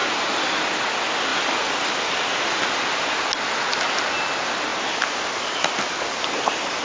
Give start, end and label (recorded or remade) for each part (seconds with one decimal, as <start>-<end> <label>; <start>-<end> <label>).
0.0-6.8 recorded